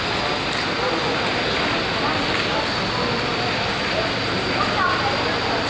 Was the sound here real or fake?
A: real